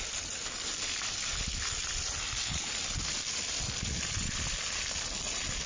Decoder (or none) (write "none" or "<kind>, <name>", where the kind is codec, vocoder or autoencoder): none